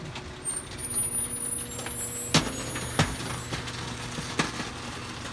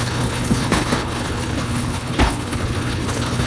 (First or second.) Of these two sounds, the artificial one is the second